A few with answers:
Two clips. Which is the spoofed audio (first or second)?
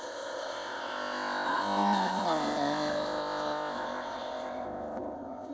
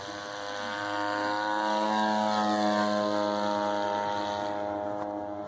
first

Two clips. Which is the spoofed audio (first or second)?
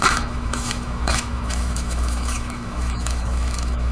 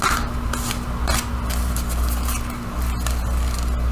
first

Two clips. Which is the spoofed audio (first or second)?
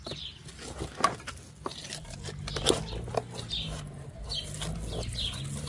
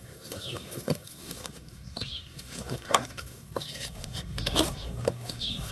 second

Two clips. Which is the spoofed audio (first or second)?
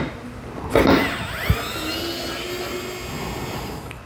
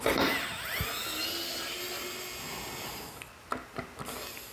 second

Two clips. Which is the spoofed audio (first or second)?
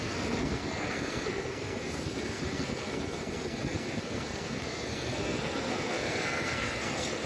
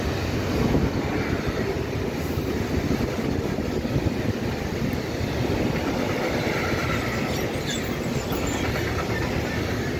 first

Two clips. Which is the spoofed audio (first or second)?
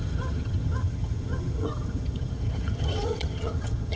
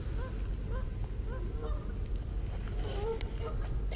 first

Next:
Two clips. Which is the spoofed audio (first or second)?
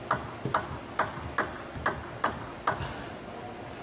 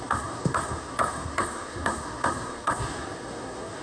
second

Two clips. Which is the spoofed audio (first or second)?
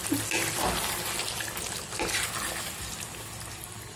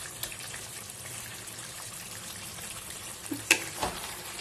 second